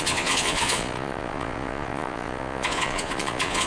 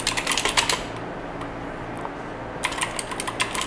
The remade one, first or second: first